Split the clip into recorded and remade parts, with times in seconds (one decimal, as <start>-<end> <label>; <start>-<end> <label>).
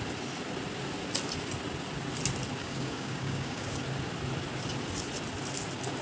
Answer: 0.0-2.6 recorded; 2.6-3.8 remade; 3.8-6.0 recorded